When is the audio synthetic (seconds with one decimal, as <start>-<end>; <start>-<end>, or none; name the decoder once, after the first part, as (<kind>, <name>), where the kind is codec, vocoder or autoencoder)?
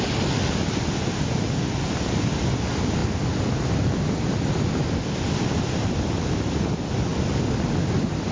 none